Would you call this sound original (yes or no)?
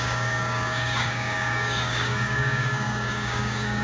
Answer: no